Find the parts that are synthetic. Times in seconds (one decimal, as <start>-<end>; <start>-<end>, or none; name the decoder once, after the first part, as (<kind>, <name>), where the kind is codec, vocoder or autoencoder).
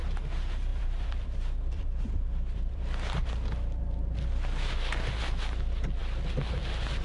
0.7-3.8 (vocoder, BigVGAN v2)